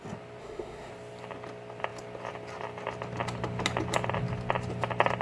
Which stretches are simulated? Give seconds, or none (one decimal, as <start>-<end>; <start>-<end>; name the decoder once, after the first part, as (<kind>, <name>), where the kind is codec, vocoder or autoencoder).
0.4-0.9 (autoencoder, DAC-VAE)